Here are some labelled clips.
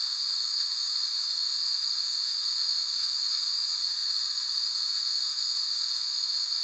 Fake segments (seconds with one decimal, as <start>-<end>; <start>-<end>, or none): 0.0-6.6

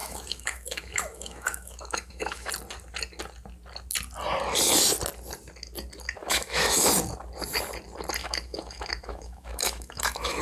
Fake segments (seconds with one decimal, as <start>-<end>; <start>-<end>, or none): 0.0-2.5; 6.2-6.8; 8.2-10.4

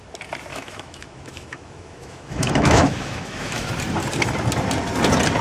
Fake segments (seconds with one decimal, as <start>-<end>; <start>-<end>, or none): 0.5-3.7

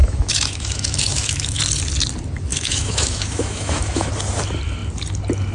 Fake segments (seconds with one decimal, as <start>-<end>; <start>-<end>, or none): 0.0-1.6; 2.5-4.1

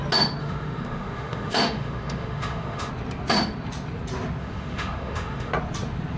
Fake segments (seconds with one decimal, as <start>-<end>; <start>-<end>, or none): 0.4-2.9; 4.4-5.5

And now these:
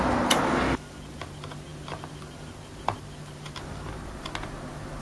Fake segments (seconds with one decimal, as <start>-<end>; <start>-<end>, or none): none